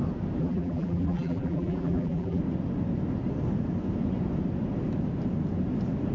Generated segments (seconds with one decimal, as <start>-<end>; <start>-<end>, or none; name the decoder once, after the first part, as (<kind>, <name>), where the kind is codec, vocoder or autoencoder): 0.4-2.4 (vocoder, BigVGAN v2)